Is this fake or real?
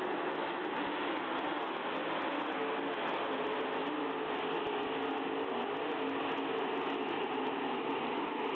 real